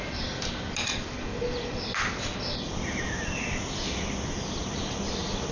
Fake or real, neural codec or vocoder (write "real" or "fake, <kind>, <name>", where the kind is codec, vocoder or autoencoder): real